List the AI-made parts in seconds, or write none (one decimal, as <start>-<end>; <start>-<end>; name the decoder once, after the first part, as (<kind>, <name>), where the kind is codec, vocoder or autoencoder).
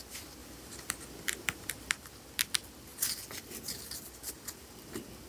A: none